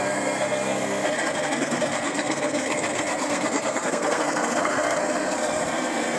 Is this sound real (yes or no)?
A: no